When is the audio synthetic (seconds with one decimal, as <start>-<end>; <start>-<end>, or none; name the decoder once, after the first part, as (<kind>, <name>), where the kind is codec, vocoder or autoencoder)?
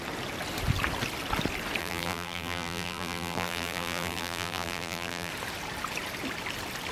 1.8-5.3 (vocoder, BigVGAN v2)